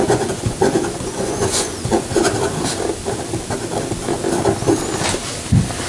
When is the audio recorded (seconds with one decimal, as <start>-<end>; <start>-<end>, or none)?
2.3-5.9